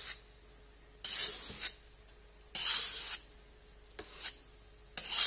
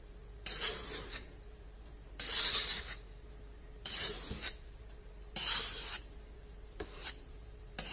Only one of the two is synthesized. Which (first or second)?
second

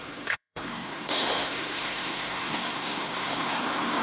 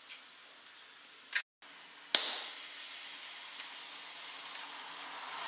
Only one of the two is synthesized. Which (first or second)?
first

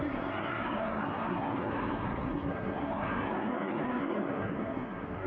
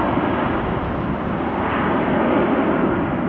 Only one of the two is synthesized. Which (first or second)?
first